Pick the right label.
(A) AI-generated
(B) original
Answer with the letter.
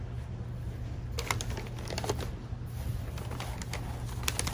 B